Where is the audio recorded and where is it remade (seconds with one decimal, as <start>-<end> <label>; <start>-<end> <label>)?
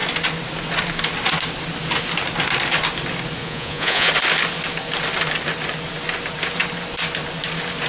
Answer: 0.0-3.4 recorded; 3.4-4.1 remade; 4.1-7.9 recorded